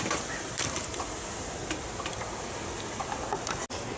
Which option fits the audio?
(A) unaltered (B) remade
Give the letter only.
A